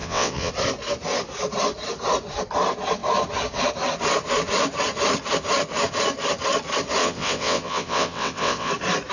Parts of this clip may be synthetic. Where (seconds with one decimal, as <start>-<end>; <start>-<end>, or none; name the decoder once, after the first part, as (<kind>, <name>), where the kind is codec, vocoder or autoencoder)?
0.0-0.5 (vocoder, WaveNeXt); 7.0-8.7